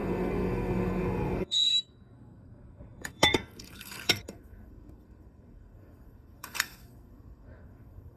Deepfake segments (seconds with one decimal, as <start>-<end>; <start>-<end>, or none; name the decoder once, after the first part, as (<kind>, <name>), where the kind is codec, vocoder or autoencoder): 0.0-8.2 (codec, SNAC)